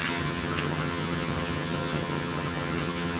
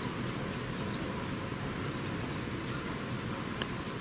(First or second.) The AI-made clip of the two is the first